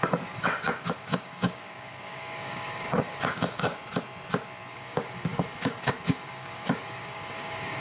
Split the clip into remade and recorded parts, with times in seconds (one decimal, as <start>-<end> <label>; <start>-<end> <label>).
0.0-3.7 remade; 3.7-4.7 recorded; 4.7-7.8 remade